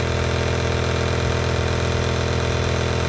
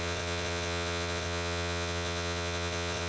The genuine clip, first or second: first